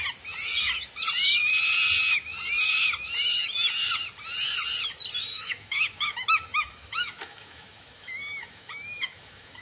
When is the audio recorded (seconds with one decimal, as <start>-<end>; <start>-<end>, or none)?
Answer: 0.0-5.3